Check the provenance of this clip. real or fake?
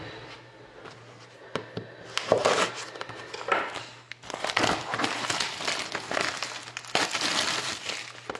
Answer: real